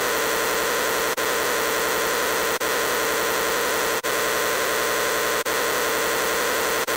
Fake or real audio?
real